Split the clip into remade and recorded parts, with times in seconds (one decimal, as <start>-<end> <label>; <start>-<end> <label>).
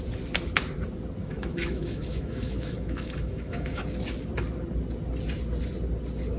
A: 0.0-1.2 recorded; 1.2-3.8 remade; 3.8-6.4 recorded